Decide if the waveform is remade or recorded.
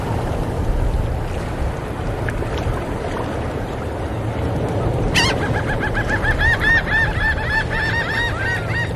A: recorded